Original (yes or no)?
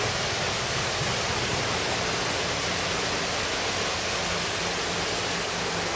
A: yes